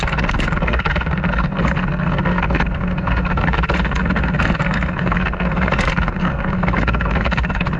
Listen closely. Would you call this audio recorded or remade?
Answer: remade